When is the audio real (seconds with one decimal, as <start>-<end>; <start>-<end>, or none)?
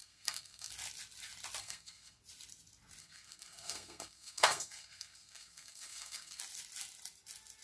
0.7-1.6; 2.2-3.0; 6.4-7.6